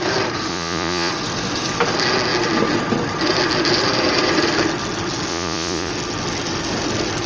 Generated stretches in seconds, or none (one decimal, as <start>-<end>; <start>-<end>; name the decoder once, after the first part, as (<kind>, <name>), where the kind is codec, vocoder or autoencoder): 0.5-1.1 (vocoder, Vocos); 5.3-5.9